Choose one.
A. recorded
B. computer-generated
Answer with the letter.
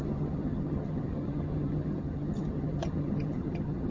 B